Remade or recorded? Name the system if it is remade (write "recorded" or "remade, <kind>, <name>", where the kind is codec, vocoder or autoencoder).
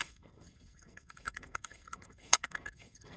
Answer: remade, codec, SNAC